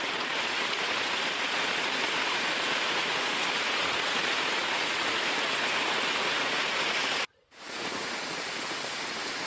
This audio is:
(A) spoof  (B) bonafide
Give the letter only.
A